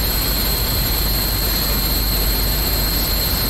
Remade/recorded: recorded